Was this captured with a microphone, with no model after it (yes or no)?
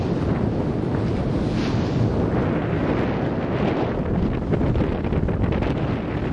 yes